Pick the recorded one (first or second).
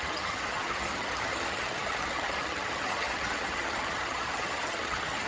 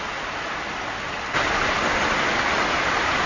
second